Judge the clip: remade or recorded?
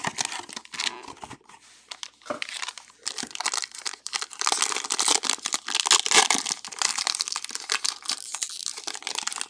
recorded